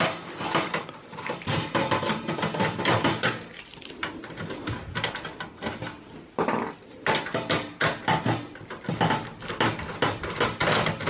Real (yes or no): yes